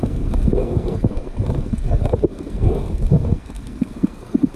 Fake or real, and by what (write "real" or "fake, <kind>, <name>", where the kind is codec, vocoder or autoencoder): fake, codec, SNAC